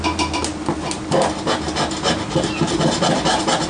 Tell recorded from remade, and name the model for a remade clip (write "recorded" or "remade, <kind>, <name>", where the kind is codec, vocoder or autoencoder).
recorded